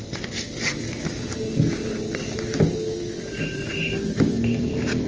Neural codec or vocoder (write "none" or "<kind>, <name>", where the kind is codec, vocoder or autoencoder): none